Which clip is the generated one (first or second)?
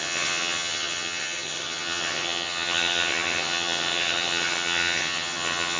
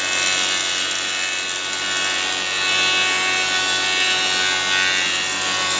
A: first